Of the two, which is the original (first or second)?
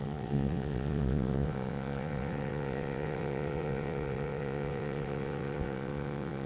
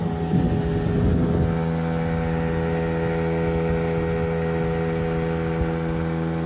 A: second